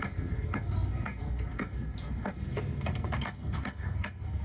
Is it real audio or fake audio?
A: fake